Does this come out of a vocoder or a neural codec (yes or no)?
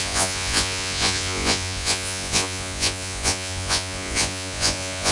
yes